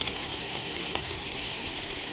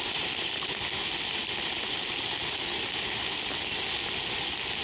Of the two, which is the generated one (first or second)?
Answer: first